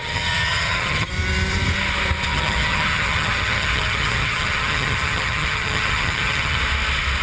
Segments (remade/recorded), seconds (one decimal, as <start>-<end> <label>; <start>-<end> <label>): 0.0-1.1 remade; 1.1-2.3 recorded; 2.3-6.6 remade; 6.6-7.2 recorded